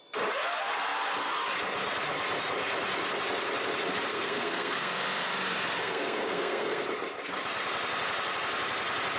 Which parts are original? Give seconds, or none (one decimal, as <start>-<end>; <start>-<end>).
0.0-4.1; 4.9-5.8; 6.8-9.2